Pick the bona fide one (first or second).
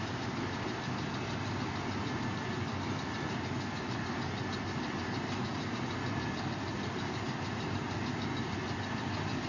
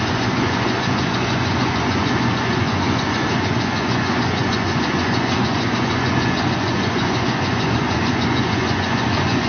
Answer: first